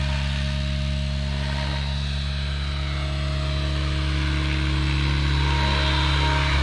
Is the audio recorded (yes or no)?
yes